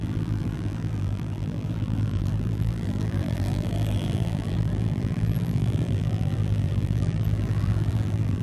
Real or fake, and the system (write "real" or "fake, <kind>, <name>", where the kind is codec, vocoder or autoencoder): fake, vocoder, BigVGAN v2